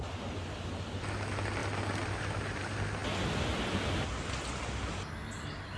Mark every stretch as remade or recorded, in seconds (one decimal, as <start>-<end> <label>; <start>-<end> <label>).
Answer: 0.0-5.8 recorded